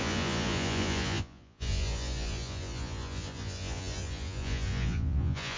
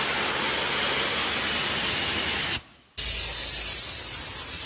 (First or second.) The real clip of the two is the second